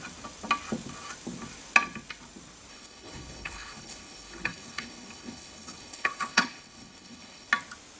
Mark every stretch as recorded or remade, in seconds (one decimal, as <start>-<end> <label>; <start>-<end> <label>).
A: 0.0-2.7 recorded; 2.7-7.5 remade; 7.5-8.0 recorded